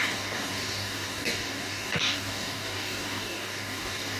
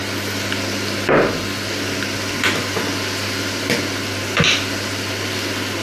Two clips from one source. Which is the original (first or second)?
second